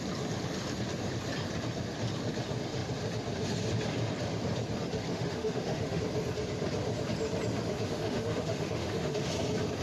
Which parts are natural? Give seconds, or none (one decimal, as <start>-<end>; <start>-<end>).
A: 0.0-5.1; 6.0-7.7; 9.3-9.8